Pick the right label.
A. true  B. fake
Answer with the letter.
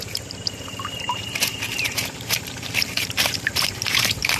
B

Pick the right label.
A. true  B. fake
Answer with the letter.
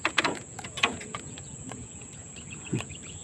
B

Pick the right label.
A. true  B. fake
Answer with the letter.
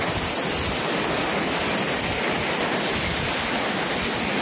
A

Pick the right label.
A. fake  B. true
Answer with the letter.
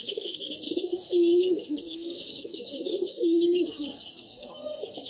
A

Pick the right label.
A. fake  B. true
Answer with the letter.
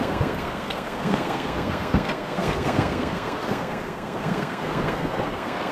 A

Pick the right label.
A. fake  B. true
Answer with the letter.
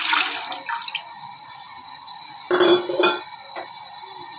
B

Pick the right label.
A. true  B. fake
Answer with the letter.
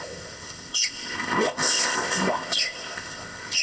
B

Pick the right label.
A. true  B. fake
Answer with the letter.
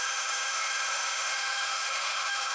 B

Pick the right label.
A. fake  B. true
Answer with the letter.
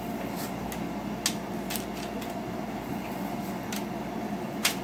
B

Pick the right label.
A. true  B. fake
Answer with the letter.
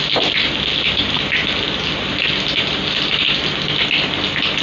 A